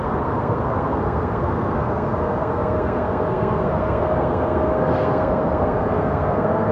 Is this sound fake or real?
fake